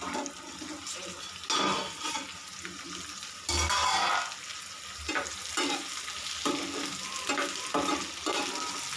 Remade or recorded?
recorded